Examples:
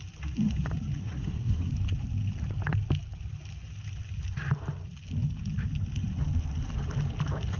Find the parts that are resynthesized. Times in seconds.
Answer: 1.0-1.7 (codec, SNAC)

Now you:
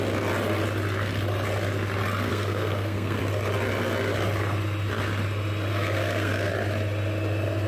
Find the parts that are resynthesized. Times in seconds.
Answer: 2.3-3.2 (codec, SNAC); 5.7-6.5

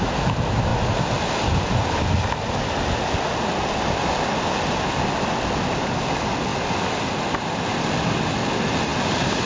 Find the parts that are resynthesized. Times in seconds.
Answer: 6.5-7.4 (vocoder, BigVGAN v2)